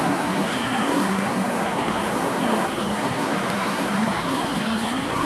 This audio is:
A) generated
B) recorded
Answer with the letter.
A